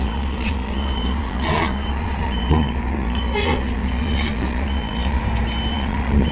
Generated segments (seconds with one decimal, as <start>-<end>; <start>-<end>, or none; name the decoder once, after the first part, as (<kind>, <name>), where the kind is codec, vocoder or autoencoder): 0.0-5.2 (vocoder, Vocos); 5.7-6.3